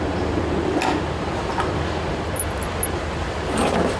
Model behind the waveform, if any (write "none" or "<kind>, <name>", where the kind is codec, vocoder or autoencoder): none